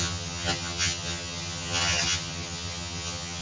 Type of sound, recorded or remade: remade